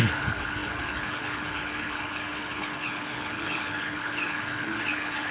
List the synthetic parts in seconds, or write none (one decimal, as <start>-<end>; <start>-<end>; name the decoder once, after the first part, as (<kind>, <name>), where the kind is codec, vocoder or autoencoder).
0.0-5.3 (codec, HILCodec)